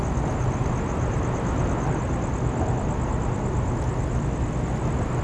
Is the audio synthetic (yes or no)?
no